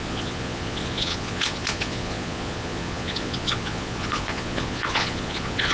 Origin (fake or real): fake